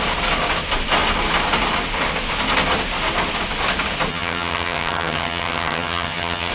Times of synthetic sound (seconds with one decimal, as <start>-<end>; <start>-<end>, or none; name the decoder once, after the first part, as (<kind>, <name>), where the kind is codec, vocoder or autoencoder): 4.1-6.5 (vocoder, HiFi-GAN)